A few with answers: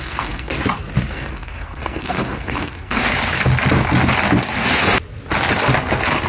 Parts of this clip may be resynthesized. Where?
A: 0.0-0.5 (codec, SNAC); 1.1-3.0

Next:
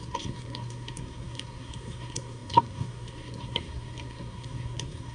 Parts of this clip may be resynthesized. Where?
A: 0.0-5.1 (codec, SNAC)

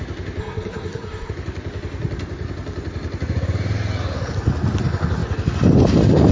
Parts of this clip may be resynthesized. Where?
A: 0.4-1.3 (codec, SNAC)

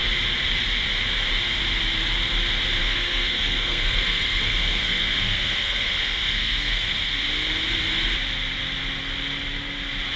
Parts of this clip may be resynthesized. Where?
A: 2.8-7.2 (codec, SNAC)